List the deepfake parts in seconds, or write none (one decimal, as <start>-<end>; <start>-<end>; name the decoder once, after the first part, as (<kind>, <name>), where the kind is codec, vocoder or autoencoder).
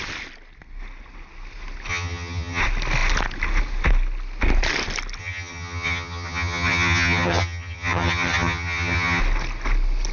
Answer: 1.9-2.6 (vocoder, HiFi-GAN); 5.2-9.2